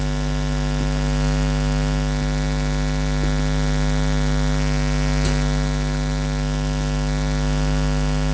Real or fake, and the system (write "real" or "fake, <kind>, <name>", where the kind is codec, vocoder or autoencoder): real